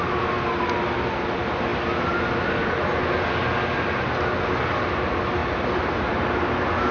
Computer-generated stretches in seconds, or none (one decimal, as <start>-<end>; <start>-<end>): none